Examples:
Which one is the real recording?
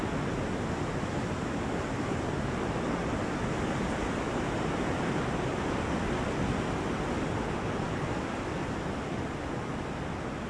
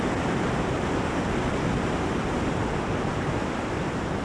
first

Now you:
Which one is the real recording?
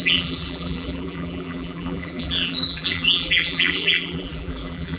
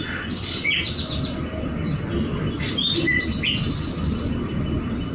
second